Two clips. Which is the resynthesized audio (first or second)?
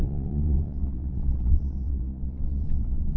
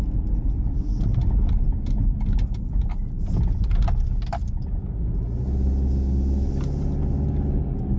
first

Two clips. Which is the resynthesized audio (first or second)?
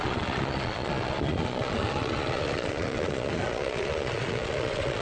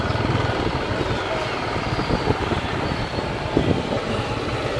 first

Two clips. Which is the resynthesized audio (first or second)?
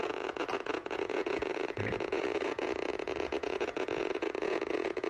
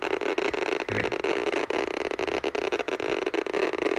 first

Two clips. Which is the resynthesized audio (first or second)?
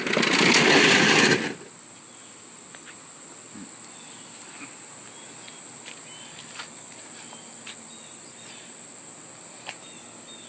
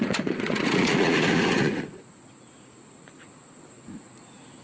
second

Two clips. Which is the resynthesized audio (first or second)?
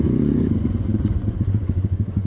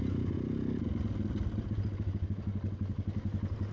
first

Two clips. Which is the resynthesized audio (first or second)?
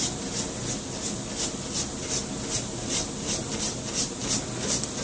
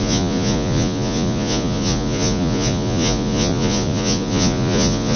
second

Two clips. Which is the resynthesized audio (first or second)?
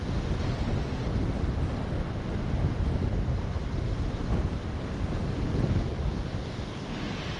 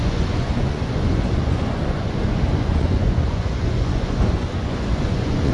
second